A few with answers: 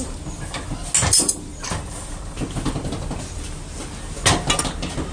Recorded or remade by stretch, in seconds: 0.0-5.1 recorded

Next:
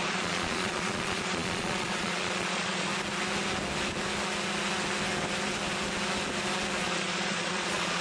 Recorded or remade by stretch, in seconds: 0.0-2.9 remade; 2.9-6.8 recorded; 6.8-8.0 remade

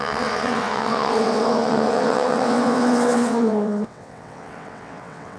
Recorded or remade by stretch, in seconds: 0.0-5.4 remade

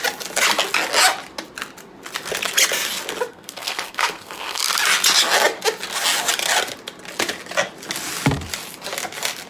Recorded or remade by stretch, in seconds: 0.0-3.3 recorded; 3.3-4.6 remade; 4.6-9.5 recorded

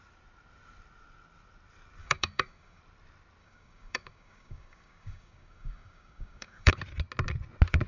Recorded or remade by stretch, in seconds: 0.0-2.0 recorded; 2.0-2.8 remade; 2.8-3.4 recorded; 3.4-6.7 remade; 6.7-7.9 recorded

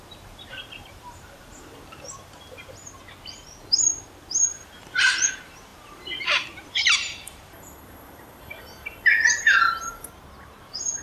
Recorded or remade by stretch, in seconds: 0.0-2.8 remade; 2.8-4.5 recorded; 4.5-11.0 remade

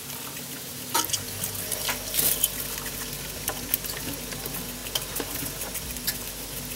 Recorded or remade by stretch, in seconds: 0.0-6.8 recorded

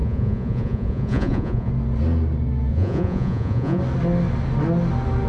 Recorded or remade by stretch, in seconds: 0.0-1.7 remade; 1.7-2.7 recorded; 2.7-3.8 remade; 3.8-5.3 recorded